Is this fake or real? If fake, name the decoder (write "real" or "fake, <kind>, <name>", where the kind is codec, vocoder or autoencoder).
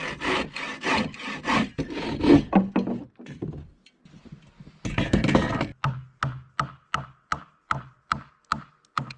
real